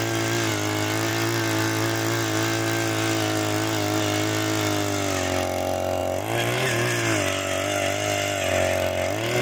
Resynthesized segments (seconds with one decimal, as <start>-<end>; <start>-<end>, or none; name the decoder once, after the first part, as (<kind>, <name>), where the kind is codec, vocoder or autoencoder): none